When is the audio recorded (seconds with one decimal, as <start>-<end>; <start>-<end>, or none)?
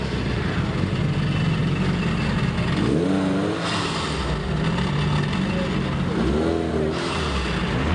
0.0-7.9